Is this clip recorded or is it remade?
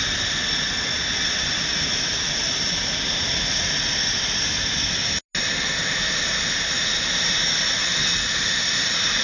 recorded